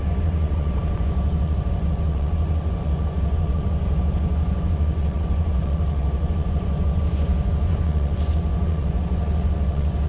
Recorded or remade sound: remade